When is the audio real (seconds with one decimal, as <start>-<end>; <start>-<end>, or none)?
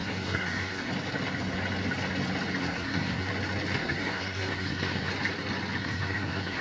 0.9-2.6; 3.3-3.8; 5.1-5.8